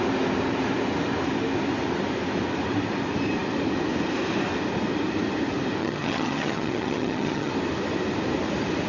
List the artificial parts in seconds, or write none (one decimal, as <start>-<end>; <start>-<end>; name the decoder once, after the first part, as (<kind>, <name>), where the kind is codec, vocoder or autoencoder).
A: 5.8-7.5 (vocoder, HiFi-GAN)